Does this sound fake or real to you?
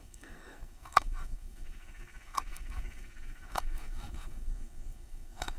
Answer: fake